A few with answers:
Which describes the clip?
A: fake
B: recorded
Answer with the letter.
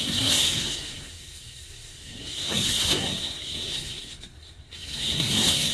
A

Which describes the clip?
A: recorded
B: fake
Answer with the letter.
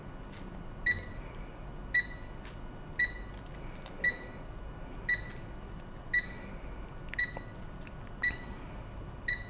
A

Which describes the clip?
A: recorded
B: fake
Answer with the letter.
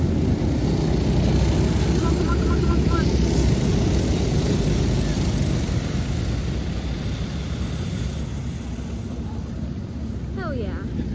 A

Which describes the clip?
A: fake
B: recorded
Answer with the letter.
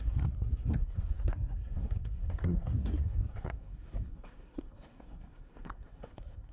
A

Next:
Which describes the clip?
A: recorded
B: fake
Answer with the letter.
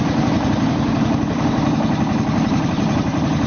A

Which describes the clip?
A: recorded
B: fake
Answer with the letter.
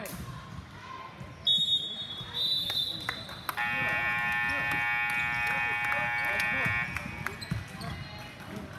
A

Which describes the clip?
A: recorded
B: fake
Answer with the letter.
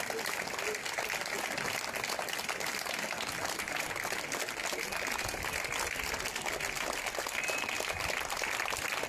A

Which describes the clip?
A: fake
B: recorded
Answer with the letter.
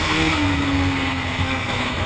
A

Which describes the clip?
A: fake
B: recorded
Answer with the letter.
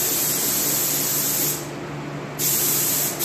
B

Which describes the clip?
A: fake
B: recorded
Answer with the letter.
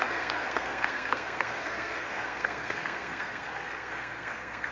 A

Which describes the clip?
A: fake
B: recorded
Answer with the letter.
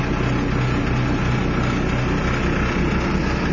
B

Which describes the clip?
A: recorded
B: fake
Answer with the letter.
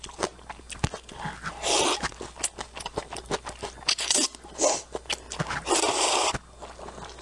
A